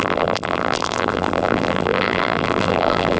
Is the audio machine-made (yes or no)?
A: yes